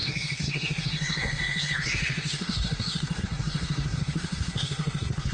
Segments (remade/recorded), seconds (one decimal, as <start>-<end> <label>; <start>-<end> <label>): 0.0-5.3 remade

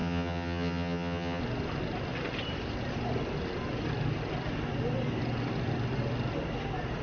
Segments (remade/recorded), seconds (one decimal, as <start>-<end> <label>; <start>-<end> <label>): 0.0-1.4 remade; 1.4-7.0 recorded

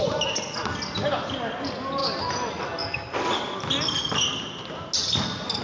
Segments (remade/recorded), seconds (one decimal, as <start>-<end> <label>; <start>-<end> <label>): 0.0-5.6 recorded

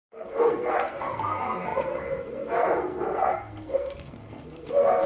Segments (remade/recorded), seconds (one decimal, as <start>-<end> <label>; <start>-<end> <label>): 0.0-5.1 remade

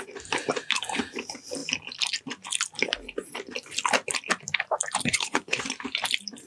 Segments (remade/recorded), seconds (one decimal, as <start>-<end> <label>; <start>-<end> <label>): 0.0-5.0 recorded; 5.0-5.6 remade; 5.6-6.5 recorded

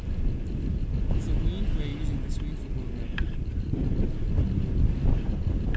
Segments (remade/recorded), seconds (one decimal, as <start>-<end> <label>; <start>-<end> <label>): 0.0-3.5 recorded; 3.5-4.2 remade; 4.2-5.8 recorded

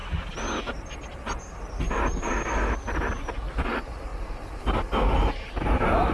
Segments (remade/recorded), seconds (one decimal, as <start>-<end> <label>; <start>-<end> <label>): 0.0-6.1 recorded

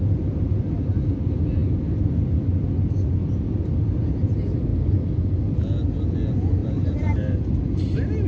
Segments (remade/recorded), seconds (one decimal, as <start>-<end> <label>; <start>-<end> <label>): 0.0-6.6 recorded; 6.6-7.4 remade; 7.4-8.3 recorded